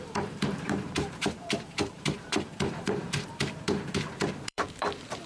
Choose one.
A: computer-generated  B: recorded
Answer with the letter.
A